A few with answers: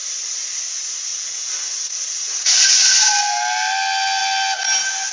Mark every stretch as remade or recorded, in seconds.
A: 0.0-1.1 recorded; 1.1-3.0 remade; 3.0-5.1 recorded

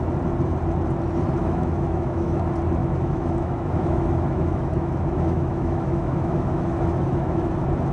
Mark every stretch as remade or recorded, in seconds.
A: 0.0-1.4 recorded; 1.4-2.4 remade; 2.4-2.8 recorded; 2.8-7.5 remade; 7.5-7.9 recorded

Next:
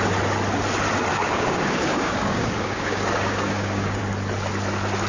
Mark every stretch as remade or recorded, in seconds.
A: 0.0-1.1 recorded; 1.1-4.0 remade; 4.0-5.1 recorded

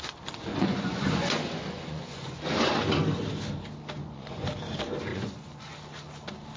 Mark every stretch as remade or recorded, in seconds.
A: 0.0-0.5 recorded; 0.5-2.4 remade; 2.4-4.0 recorded; 4.0-4.5 remade; 4.5-5.1 recorded; 5.1-5.7 remade; 5.7-6.6 recorded

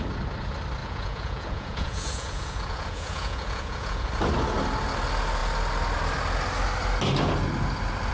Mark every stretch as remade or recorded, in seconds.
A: 0.0-0.8 recorded; 0.8-4.1 remade; 4.1-8.1 recorded

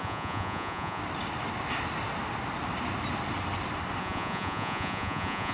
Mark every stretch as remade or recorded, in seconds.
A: 0.0-1.0 remade; 1.0-4.0 recorded; 4.0-5.5 remade

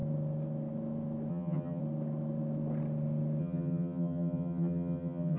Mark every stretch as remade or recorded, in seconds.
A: 0.0-1.3 recorded; 1.3-1.8 remade; 1.8-3.4 recorded; 3.4-5.4 remade

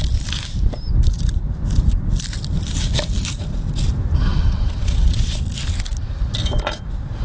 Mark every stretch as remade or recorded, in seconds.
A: 0.0-4.3 recorded; 4.3-5.4 remade; 5.4-7.2 recorded